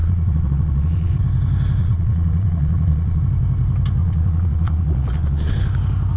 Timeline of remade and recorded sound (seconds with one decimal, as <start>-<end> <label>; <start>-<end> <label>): 0.0-1.1 remade; 1.1-1.8 recorded; 1.8-3.2 remade; 3.2-4.0 recorded; 4.0-5.5 remade; 5.5-6.2 recorded

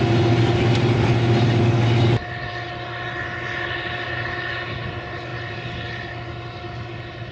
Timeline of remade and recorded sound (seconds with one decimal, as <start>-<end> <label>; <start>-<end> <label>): 0.0-7.3 recorded